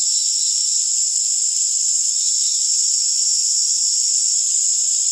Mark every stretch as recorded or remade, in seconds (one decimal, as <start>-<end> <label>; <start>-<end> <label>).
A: 0.0-5.1 recorded